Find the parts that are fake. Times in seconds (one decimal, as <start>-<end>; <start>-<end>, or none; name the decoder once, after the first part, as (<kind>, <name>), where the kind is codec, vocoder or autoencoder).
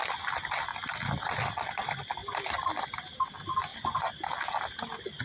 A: none